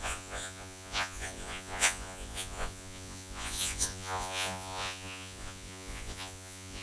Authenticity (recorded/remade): remade